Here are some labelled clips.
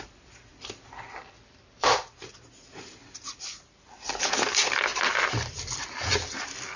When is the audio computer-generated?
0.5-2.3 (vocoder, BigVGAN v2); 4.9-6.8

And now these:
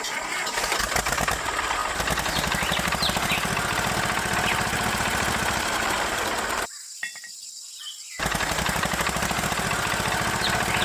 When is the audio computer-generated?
none

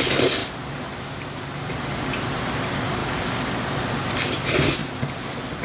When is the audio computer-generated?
none

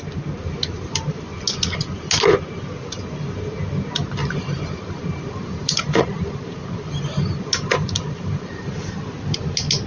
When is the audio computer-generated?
4.2-9.0 (vocoder, BigVGAN v2)

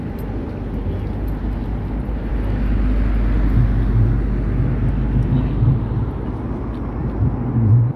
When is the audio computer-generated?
none

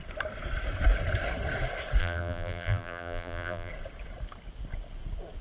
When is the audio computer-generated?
2.0-3.7 (vocoder, BigVGAN v2)